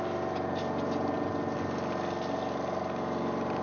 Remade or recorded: recorded